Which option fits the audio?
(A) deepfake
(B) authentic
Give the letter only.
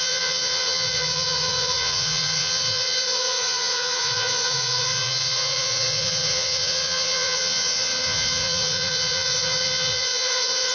A